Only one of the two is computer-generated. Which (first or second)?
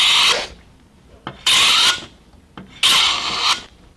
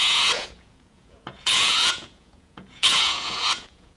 second